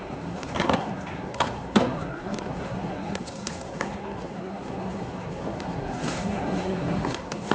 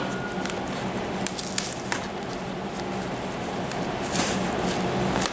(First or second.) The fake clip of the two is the first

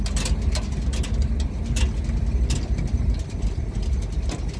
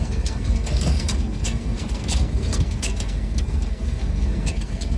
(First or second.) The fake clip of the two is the second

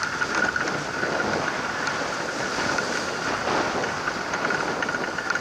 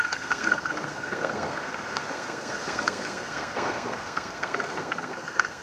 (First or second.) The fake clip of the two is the second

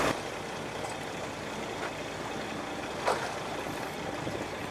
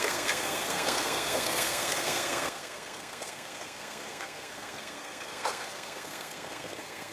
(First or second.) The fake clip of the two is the second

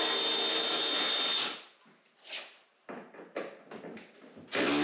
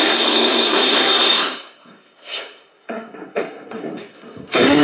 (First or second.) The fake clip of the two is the second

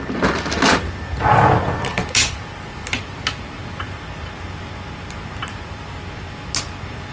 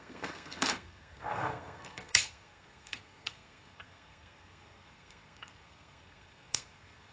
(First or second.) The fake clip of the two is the second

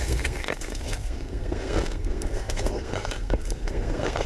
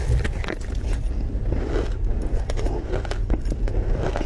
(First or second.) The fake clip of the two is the first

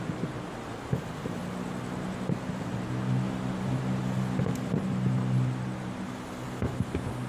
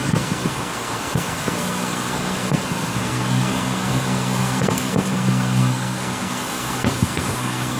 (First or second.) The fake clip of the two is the second